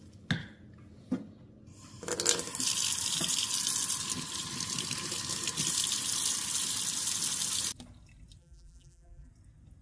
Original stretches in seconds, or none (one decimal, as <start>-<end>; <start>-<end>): 0.0-8.4; 9.3-9.8